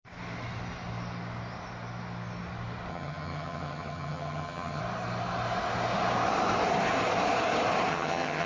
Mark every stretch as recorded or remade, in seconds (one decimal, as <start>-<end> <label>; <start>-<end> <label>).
0.0-2.9 recorded; 2.9-4.8 remade; 4.8-7.9 recorded; 7.9-8.5 remade

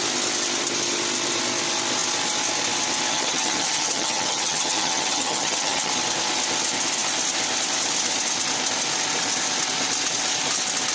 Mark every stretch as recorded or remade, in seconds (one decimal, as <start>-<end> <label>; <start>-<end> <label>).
0.0-3.1 recorded; 3.1-5.9 remade; 5.9-10.9 recorded